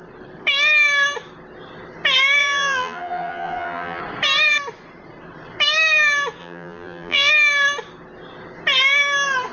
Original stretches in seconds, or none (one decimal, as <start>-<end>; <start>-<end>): 0.0-2.4; 4.0-6.4; 7.3-9.5